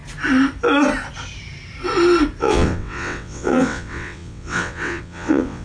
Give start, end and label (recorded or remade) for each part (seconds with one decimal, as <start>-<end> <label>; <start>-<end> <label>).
0.0-2.4 recorded; 2.4-5.6 remade